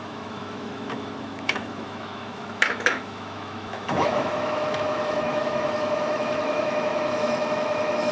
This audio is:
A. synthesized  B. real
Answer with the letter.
A